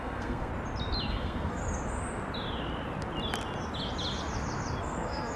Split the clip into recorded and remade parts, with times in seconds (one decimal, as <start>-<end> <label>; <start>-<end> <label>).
0.0-0.5 remade; 0.5-1.1 recorded; 1.1-1.6 remade; 1.6-4.8 recorded; 4.8-5.4 remade